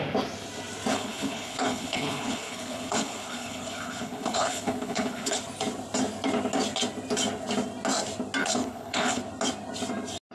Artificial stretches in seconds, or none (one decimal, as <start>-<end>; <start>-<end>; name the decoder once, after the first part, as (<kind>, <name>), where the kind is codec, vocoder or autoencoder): 0.9-5.4 (codec, HILCodec); 8.4-9.2